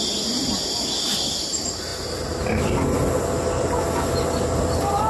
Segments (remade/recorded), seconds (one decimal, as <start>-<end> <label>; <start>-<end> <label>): 0.0-5.1 recorded